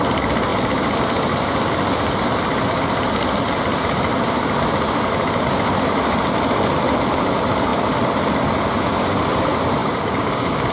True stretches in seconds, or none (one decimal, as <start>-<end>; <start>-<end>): 0.0-9.8